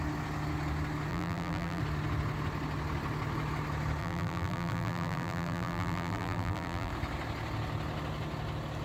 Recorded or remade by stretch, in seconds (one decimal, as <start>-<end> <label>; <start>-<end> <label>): 0.0-1.1 recorded; 1.1-1.8 remade; 1.8-4.0 recorded; 4.0-6.9 remade; 6.9-8.8 recorded